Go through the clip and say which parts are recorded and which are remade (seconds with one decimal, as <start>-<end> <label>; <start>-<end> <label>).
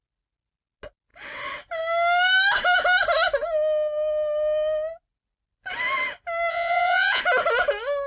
0.0-6.5 recorded; 6.5-7.2 remade; 7.2-8.1 recorded